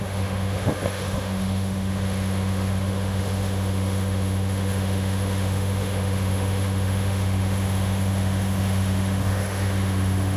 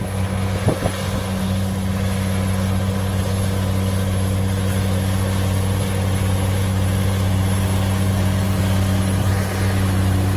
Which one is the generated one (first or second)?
first